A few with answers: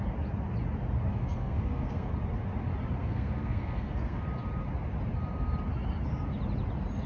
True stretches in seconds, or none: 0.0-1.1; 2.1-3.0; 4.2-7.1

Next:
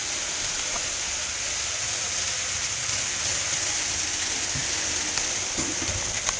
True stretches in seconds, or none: 0.0-6.4

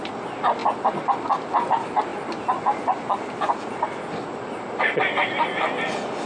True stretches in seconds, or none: 0.0-6.3

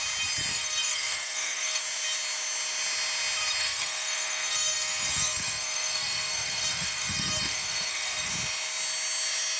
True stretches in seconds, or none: 0.0-0.5; 1.8-3.6; 8.3-9.6